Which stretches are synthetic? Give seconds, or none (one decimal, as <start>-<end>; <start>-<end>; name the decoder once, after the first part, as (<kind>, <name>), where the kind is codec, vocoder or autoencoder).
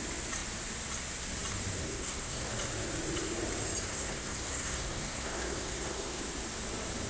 1.8-2.5 (codec, SNAC); 3.9-6.2